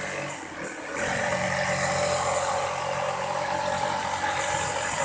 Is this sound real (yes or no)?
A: yes